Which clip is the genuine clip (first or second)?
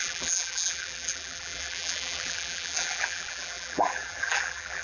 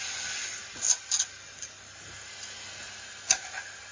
second